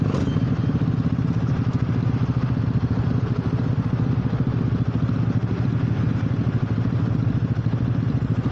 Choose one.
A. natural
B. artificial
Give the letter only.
A